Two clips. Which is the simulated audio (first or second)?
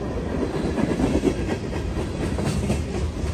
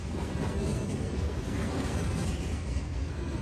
second